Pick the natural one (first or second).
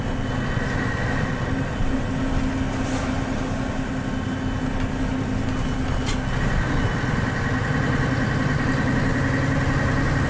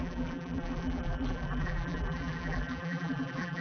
first